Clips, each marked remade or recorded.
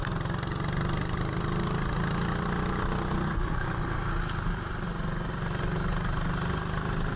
recorded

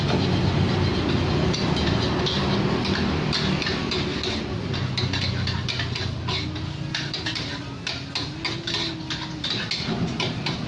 recorded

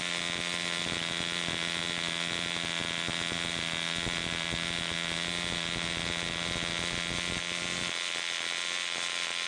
recorded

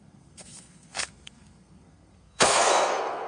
remade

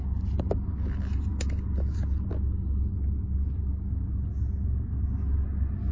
recorded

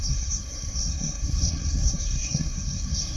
remade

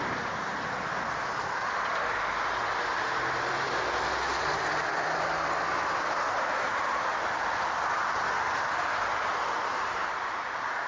recorded